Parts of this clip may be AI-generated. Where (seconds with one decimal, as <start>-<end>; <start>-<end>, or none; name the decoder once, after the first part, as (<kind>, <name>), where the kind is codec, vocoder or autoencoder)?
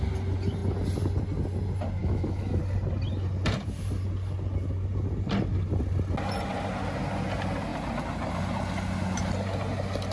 2.0-2.6 (autoencoder, DAC-VAE)